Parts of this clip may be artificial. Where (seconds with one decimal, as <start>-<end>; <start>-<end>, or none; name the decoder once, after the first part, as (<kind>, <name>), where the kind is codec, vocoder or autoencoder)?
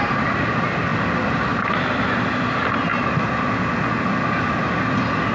none